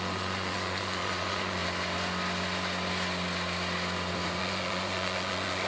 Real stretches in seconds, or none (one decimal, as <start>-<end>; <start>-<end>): 1.6-4.4